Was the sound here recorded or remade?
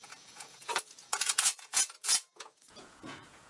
remade